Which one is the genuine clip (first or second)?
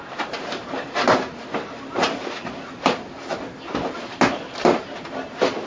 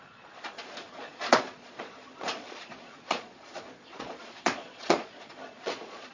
first